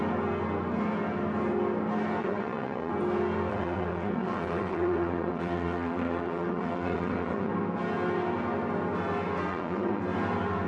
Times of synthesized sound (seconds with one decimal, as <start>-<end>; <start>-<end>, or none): 2.2-2.9; 3.5-7.5; 9.5-10.0